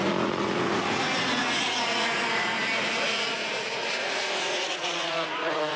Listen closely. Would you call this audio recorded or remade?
remade